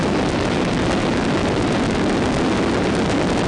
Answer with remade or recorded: recorded